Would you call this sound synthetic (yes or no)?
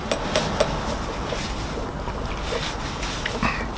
no